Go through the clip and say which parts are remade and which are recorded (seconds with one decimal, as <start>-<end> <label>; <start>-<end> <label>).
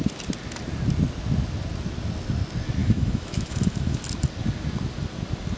0.0-2.8 recorded; 2.8-4.0 remade; 4.0-5.6 recorded